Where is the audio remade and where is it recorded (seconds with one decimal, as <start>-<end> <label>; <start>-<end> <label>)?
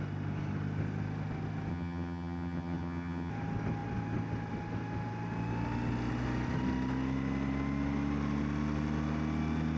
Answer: 0.0-1.7 recorded; 1.7-3.3 remade; 3.3-9.8 recorded